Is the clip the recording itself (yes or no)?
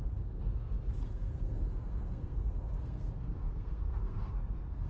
no